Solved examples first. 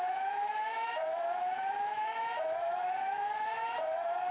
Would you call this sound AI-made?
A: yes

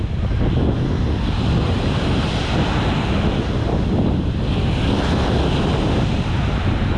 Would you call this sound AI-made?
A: no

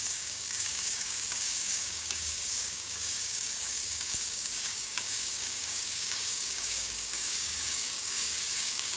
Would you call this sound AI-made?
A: yes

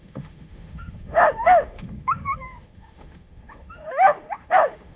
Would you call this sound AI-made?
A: yes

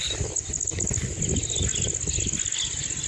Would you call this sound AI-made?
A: no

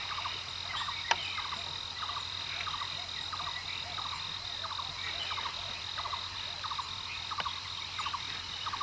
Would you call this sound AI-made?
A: no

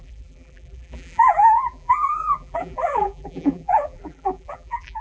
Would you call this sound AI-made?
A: yes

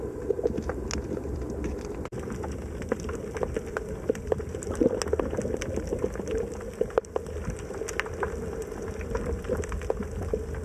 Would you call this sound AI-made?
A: no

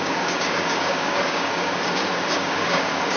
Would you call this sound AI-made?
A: yes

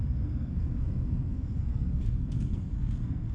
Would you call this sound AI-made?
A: yes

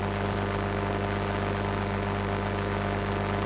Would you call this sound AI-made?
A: no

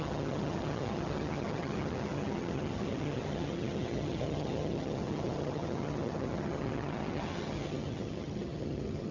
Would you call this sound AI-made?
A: yes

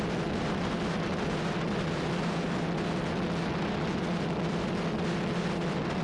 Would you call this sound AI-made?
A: no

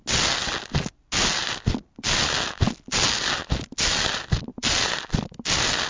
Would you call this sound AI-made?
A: no